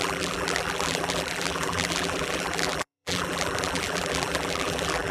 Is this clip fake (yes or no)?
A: yes